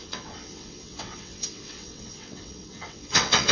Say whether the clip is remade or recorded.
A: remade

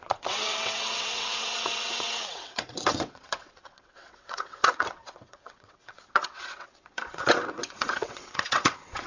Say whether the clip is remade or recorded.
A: remade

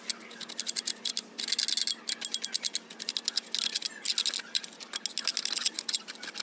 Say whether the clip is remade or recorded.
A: recorded